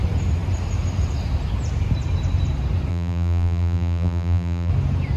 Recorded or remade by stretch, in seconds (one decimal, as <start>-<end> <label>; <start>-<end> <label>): 0.0-2.9 recorded; 2.9-4.7 remade; 4.7-5.2 recorded